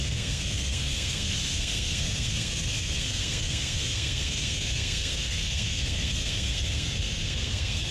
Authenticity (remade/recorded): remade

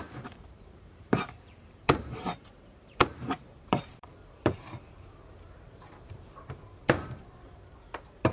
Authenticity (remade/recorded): remade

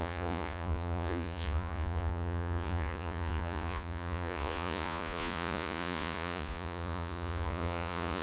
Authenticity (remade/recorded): remade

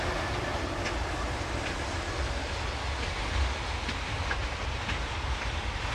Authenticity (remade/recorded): recorded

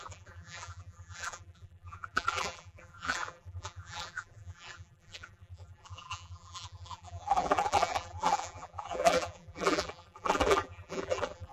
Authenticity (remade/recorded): remade